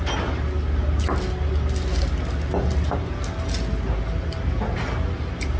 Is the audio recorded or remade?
recorded